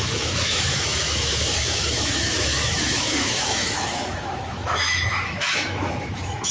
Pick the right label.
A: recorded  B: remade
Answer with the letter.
B